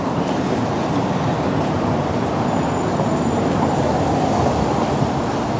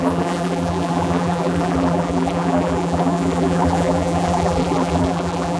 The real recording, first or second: first